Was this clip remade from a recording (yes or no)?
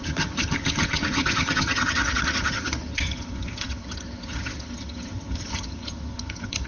yes